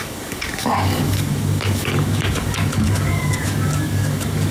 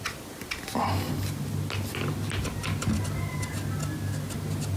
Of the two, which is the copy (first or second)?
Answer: first